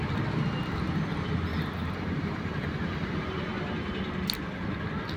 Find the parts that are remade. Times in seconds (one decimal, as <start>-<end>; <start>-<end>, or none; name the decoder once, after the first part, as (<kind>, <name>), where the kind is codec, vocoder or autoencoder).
1.5-3.5 (vocoder, BigVGAN v2)